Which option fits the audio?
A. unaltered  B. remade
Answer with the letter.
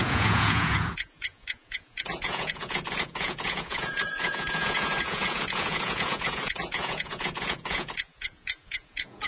B